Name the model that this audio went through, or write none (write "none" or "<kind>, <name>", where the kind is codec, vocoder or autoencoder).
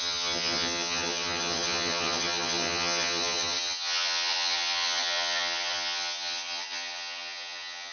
vocoder, HiFi-GAN